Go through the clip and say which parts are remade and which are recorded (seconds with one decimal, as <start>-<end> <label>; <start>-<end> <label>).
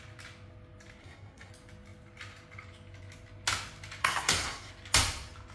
0.0-1.0 recorded; 1.0-1.5 remade; 1.5-4.0 recorded; 4.0-4.7 remade; 4.7-5.5 recorded